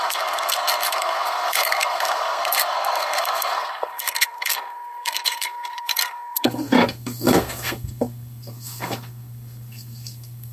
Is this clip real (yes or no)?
no